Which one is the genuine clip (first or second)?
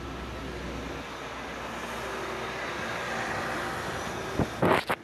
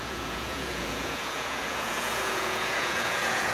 first